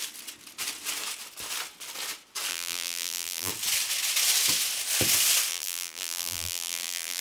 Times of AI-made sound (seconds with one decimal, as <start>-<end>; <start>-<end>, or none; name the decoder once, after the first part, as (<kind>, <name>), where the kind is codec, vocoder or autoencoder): 2.5-3.5 (vocoder, BigVGAN v2); 5.5-7.2